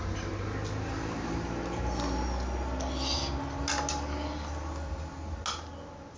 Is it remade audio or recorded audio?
recorded